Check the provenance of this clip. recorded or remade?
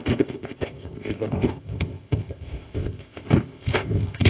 remade